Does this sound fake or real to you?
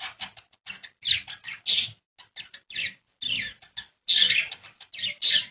real